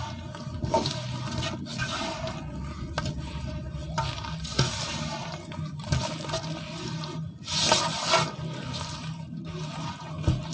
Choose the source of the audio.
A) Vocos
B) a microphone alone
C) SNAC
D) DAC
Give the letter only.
B